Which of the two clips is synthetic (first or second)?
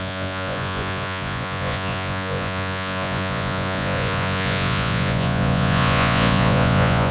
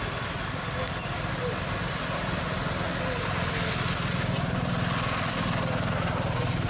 first